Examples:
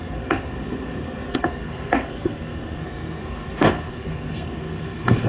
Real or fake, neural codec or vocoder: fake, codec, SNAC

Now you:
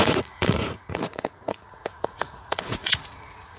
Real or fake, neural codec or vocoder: fake, vocoder, Vocos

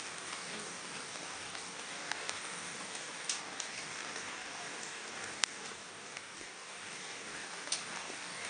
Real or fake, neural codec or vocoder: fake, codec, DAC